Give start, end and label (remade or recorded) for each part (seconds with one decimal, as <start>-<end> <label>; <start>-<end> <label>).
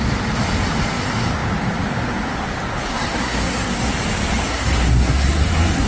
0.0-2.9 recorded; 2.9-3.9 remade; 3.9-4.5 recorded; 4.5-5.9 remade